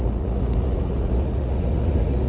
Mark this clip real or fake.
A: fake